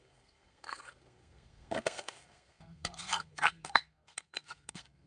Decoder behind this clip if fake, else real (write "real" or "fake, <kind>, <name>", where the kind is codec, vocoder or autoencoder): fake, codec, SNAC